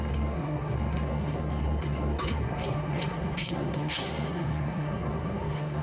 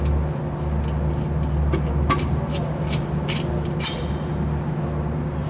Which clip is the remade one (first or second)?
first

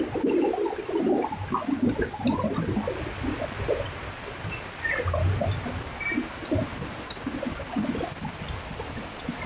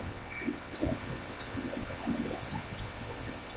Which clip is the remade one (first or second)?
second